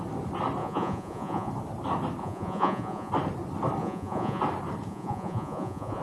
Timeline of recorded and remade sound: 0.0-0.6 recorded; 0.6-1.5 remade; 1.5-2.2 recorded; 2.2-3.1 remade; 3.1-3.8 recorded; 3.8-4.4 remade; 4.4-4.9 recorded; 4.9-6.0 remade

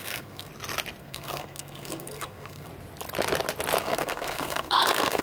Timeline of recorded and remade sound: 0.0-0.5 remade; 0.5-1.0 recorded; 1.0-2.7 remade; 2.7-3.8 recorded; 3.8-5.2 remade